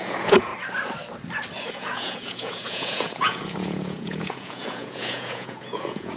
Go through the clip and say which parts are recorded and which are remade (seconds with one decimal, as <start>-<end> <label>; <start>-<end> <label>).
0.0-0.5 remade; 0.5-1.7 recorded; 1.7-6.2 remade